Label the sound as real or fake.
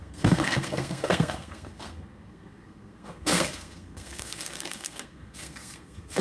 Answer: fake